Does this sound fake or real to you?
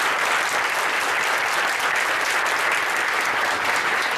fake